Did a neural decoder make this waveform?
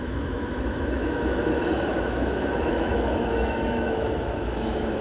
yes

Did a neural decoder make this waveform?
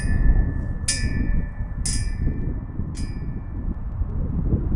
no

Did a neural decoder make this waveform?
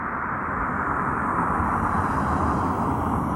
no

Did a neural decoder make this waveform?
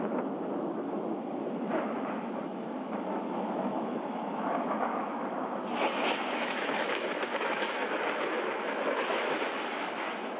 yes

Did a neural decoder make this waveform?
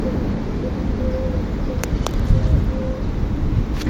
no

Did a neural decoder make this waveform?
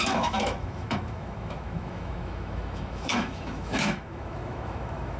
yes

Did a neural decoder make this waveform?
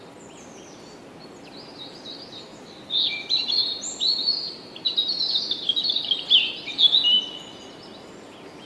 no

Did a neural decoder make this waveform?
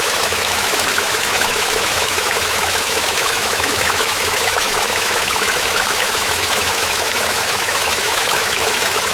yes